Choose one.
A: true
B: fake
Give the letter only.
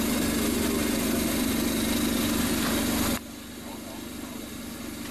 A